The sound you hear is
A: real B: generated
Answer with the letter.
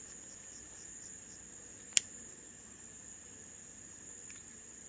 A